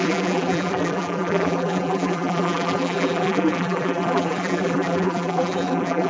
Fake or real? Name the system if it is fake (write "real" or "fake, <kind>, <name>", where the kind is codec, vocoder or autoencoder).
fake, vocoder, BigVGAN v2